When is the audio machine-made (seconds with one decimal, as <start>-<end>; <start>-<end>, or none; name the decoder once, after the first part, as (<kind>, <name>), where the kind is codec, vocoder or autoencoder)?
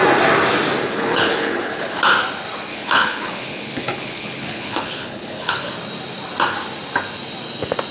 0.8-2.0 (codec, HILCodec); 2.7-5.7